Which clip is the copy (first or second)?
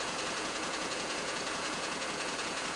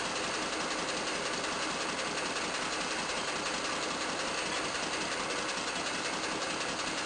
first